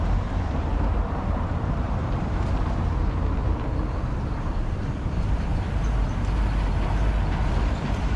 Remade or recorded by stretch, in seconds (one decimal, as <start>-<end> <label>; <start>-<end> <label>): 0.0-5.5 remade; 5.5-7.5 recorded; 7.5-8.2 remade